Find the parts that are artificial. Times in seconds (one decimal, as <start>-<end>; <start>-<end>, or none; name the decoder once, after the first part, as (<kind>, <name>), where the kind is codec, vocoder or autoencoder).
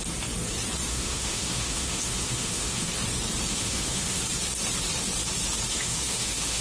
0.9-2.9 (autoencoder, DAC-VAE); 3.5-4.2; 5.7-6.6